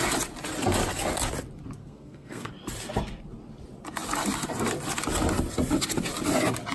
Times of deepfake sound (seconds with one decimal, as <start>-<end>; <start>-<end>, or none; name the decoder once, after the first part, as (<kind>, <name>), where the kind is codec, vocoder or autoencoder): 1.8-2.5 (codec, SNAC)